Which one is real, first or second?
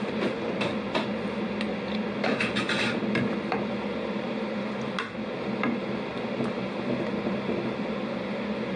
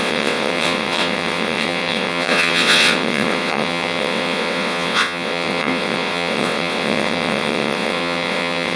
first